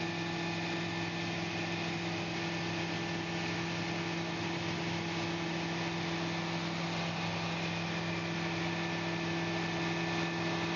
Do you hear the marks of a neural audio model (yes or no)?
no